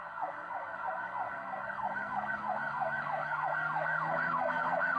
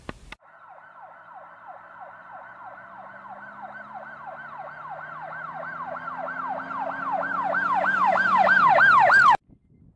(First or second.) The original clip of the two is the second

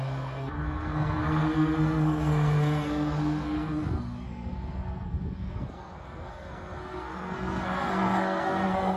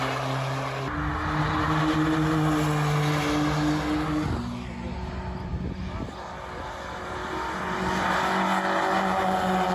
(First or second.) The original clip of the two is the second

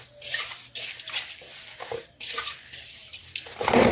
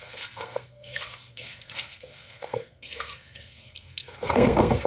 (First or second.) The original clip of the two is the first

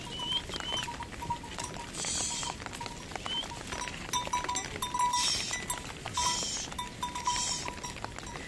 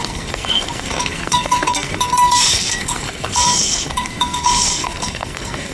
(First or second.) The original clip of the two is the first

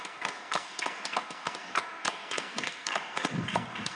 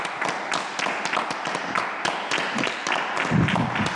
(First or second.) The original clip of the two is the second